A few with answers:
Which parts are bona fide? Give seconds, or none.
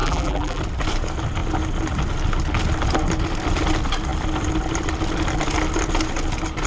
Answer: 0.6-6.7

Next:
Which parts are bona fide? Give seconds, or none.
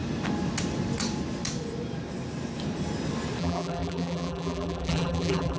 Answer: 0.0-3.4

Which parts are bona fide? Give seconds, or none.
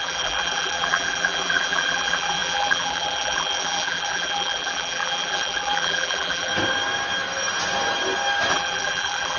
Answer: 6.5-8.5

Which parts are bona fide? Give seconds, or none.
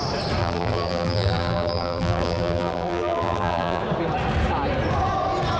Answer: 0.0-0.4; 3.8-5.6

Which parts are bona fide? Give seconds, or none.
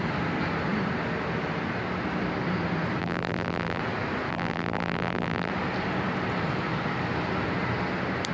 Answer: 0.0-3.0; 3.8-4.3; 5.5-8.3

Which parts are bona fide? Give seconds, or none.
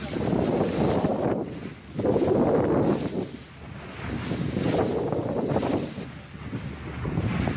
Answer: 0.0-7.6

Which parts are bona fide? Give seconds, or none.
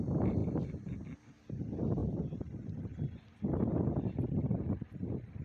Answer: 0.0-0.4; 1.0-2.0; 4.1-4.5